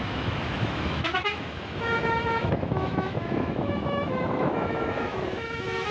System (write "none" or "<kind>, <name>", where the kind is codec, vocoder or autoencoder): autoencoder, DAC-VAE